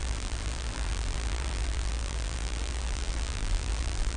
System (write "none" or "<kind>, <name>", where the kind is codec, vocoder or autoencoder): vocoder, BigVGAN v2